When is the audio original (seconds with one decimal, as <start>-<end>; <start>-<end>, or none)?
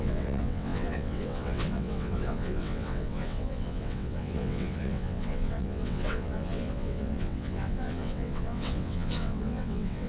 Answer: none